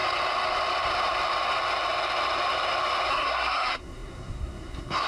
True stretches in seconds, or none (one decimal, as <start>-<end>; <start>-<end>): 0.0-3.1

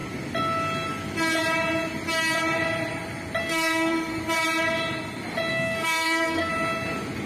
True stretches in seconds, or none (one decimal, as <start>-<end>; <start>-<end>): 0.0-3.4; 4.2-5.5; 6.5-7.3

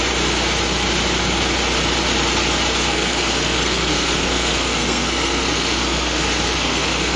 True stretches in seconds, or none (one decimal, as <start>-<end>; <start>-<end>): 0.0-2.9

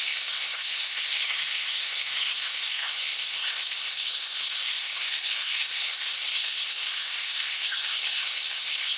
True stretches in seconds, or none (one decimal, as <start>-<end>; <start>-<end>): none

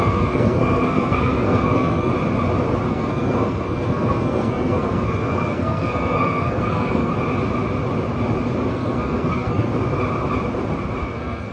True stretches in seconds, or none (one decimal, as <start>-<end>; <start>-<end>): 2.1-2.9; 7.1-8.7; 9.7-11.0

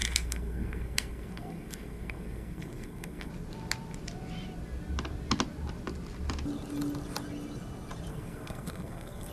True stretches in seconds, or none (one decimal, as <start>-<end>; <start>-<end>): 3.3-8.1